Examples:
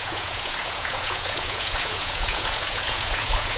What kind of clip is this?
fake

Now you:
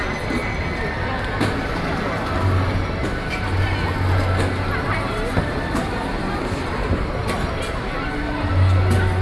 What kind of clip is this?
real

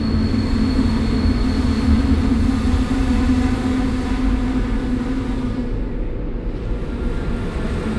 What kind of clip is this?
real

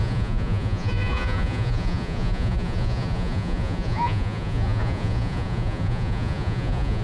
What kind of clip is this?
fake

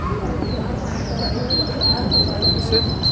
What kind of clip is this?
real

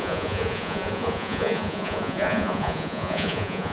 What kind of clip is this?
fake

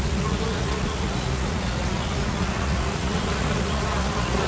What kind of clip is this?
fake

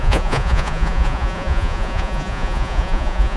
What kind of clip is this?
fake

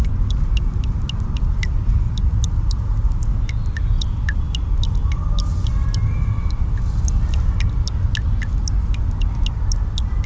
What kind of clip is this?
real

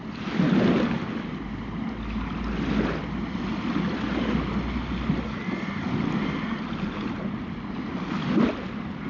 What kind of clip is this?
real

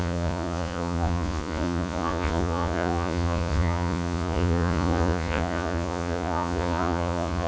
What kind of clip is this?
fake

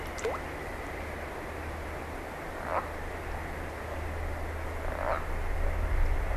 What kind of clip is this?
real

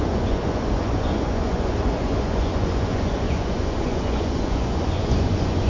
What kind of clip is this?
fake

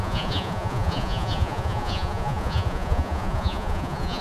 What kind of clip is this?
fake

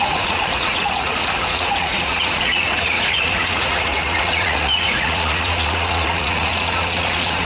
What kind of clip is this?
fake